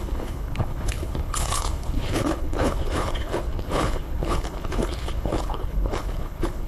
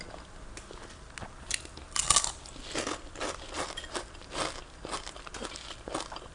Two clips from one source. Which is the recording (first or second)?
second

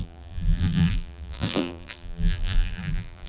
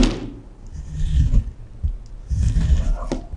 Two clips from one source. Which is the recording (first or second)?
second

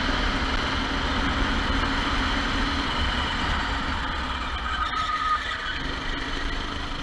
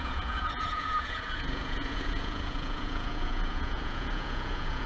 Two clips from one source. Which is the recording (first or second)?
first